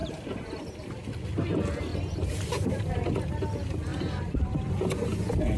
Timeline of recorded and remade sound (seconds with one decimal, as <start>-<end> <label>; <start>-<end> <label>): 0.0-0.9 remade; 0.9-1.9 recorded; 1.9-2.9 remade; 2.9-3.9 recorded; 3.9-4.7 remade; 4.7-5.6 recorded